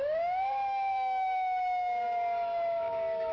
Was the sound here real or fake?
fake